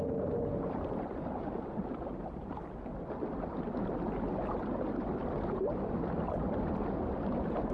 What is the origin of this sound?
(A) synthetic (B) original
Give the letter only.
B